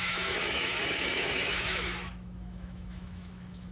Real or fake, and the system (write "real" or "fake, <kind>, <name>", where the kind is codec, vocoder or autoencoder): fake, autoencoder, DAC-VAE